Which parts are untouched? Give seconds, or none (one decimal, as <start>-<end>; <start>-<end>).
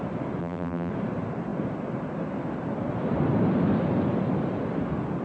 0.0-0.4; 0.9-5.2